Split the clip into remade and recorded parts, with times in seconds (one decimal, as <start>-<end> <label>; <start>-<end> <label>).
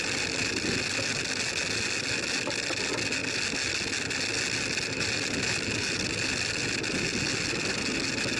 0.0-8.4 recorded